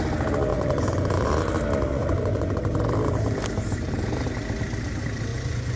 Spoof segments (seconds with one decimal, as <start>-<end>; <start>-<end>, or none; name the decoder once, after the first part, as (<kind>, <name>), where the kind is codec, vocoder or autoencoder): 0.5-1.3 (vocoder, Vocos); 1.9-2.6; 5.3-5.8